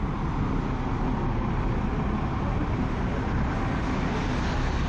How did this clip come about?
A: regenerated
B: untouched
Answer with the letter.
B